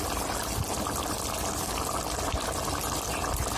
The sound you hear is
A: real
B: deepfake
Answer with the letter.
A